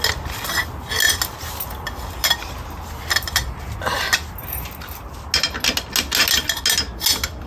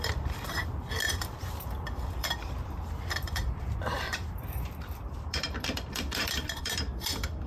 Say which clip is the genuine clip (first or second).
first